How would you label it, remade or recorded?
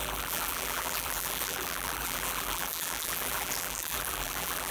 remade